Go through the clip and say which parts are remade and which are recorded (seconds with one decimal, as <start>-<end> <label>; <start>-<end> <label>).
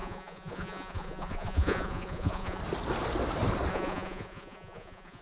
0.0-2.6 remade; 2.6-3.7 recorded; 3.7-5.2 remade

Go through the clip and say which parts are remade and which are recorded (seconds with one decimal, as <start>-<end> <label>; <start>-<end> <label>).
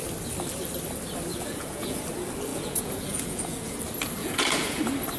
0.0-1.3 recorded; 1.3-2.0 remade; 2.0-2.5 recorded; 2.5-3.8 remade; 3.8-4.2 recorded; 4.2-4.8 remade; 4.8-5.2 recorded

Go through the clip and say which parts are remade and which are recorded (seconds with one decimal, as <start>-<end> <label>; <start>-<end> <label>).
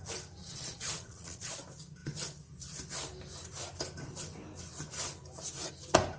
0.0-0.4 recorded; 0.4-1.6 remade; 1.6-6.2 recorded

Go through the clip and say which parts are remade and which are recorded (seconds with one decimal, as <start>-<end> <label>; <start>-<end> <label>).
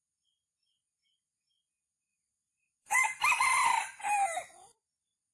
0.0-5.3 recorded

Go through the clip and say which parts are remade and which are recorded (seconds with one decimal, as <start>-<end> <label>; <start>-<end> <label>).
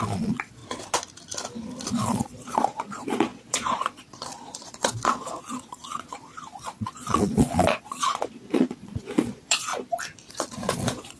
0.0-0.6 remade; 0.6-1.9 recorded; 1.9-9.7 remade; 9.7-10.3 recorded; 10.3-11.2 remade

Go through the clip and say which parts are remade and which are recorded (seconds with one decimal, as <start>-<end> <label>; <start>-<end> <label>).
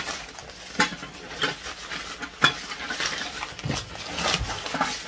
0.0-5.1 recorded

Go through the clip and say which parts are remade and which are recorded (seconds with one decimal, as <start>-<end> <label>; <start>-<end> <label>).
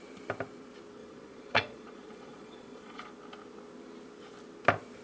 0.0-1.0 recorded; 1.0-3.1 remade; 3.1-5.0 recorded